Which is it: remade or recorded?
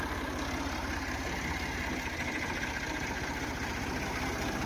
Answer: recorded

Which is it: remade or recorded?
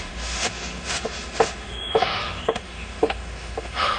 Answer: remade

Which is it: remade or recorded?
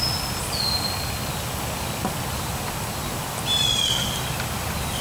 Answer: recorded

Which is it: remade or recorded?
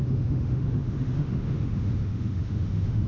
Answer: remade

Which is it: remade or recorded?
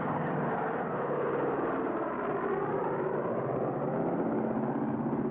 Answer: recorded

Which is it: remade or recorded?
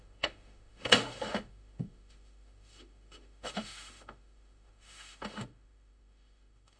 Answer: remade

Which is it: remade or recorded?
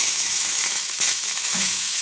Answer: remade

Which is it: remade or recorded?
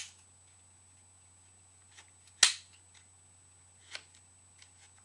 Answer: recorded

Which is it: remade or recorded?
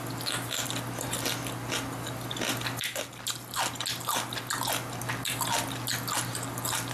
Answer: recorded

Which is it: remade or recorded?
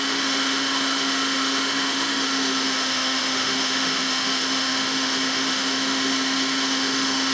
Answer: remade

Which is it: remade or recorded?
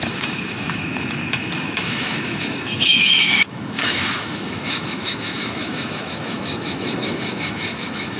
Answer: remade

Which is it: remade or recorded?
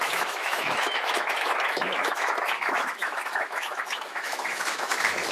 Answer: remade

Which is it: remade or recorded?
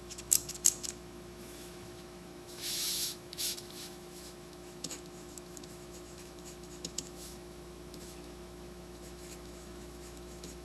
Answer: remade